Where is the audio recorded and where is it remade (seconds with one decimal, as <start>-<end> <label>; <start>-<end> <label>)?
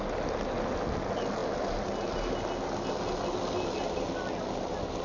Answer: 0.0-5.0 recorded